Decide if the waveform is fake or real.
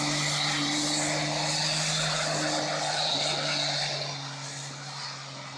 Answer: real